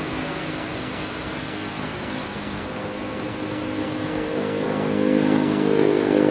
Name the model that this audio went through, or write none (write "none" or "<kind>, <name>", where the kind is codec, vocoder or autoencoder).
codec, SNAC